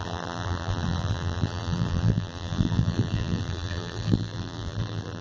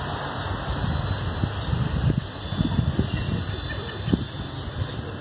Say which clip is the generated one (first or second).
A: first